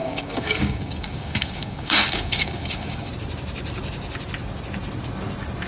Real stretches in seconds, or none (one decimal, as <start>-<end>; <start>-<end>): 3.1-5.7